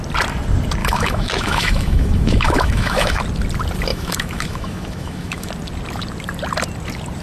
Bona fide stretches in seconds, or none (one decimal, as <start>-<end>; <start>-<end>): 0.0-0.8; 3.2-3.9; 5.5-7.2